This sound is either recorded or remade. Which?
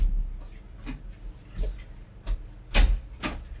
recorded